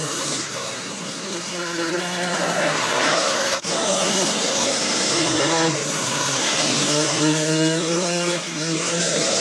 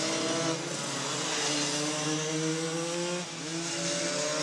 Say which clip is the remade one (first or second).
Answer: first